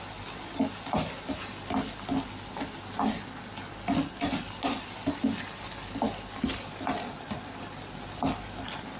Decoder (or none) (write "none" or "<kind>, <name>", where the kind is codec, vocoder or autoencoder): none